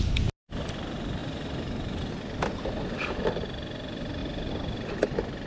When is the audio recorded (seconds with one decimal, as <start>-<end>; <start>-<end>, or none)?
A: 0.0-1.2; 2.1-5.5